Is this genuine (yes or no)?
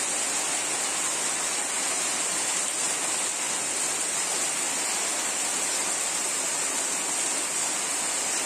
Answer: yes